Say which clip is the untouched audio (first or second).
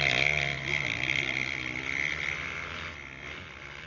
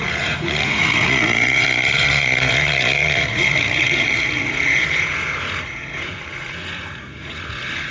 first